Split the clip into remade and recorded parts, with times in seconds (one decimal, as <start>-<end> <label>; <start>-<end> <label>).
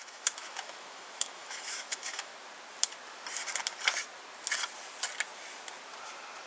0.0-2.3 remade; 2.3-6.5 recorded